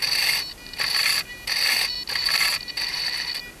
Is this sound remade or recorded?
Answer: recorded